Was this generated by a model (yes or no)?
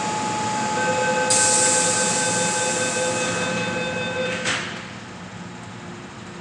no